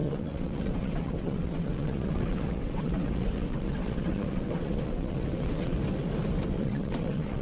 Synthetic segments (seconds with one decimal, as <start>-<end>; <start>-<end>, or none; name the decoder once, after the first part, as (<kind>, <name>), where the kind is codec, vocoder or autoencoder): 0.0-5.8 (vocoder, WaveNeXt); 6.5-7.4

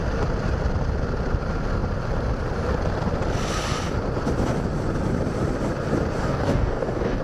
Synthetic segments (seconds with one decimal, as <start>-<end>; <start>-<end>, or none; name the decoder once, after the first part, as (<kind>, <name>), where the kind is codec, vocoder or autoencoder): 6.2-7.2 (codec, DAC)

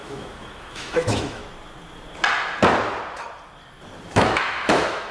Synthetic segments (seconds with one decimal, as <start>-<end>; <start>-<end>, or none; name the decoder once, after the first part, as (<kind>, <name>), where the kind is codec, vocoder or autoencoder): 0.0-1.4 (autoencoder, DAC-VAE); 4.1-5.1

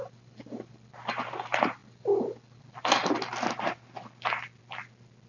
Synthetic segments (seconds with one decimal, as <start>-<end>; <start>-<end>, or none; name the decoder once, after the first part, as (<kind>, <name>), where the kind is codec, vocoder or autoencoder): none

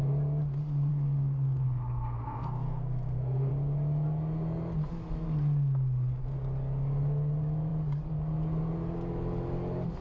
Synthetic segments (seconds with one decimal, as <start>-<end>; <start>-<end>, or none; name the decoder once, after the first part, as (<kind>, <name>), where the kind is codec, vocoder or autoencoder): 0.9-3.5 (codec, SNAC)

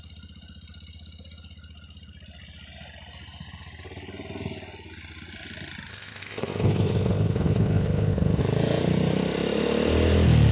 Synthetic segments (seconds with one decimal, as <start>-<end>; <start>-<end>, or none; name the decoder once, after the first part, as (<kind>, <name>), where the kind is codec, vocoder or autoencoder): 5.9-8.4 (codec, ZipCodec)